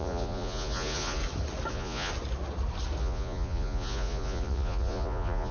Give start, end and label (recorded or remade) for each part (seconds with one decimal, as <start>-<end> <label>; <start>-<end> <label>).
0.0-1.2 remade; 1.2-1.7 recorded; 1.7-2.1 remade; 2.1-3.0 recorded; 3.0-5.5 remade